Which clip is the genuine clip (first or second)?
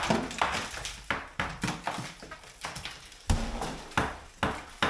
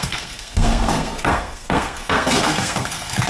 first